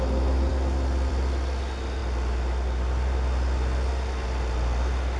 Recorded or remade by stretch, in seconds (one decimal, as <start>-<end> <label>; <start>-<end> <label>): 0.0-5.2 recorded